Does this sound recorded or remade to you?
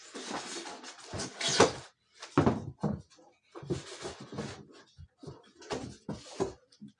recorded